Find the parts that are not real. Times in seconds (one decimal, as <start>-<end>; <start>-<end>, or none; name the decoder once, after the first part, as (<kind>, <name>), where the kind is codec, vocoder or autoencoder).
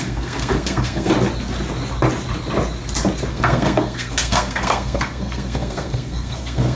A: 0.0-1.1 (codec, SNAC); 3.3-6.8